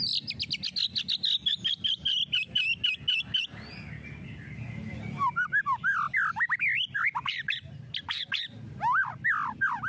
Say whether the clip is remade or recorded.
recorded